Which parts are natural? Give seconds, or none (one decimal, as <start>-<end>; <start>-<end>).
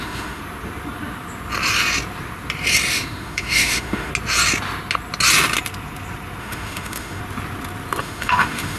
0.4-2.9; 4.1-6.4; 7.2-8.0